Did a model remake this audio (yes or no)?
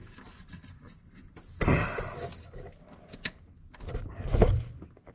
no